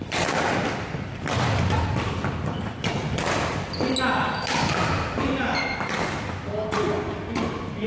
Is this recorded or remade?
recorded